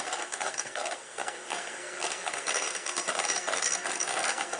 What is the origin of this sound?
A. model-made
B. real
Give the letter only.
A